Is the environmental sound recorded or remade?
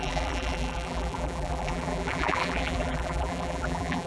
remade